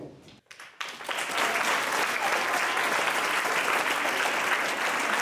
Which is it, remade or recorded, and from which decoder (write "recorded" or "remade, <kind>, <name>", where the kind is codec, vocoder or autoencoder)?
recorded